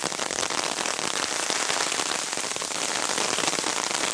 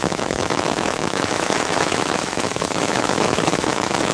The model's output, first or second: second